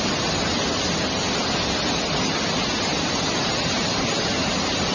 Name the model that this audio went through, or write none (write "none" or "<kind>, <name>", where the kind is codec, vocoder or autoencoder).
none